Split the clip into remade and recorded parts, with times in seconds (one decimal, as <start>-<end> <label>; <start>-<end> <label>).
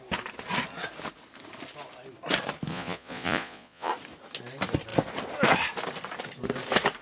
0.0-2.7 recorded; 2.7-3.9 remade; 3.9-7.0 recorded